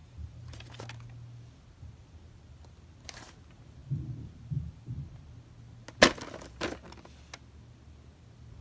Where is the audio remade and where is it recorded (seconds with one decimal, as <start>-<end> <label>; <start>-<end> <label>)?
0.0-0.8 remade; 0.8-8.6 recorded